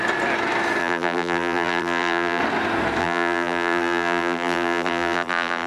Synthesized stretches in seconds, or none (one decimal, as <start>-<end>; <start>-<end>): 0.8-2.4; 3.0-5.7